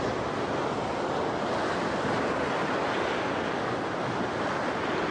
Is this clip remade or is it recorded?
recorded